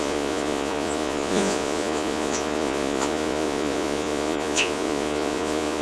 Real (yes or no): no